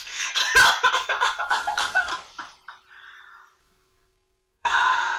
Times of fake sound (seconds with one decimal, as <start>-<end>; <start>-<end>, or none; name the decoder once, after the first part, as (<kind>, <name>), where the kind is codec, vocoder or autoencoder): 0.0-0.4 (codec, SNAC); 0.9-2.1; 3.6-5.2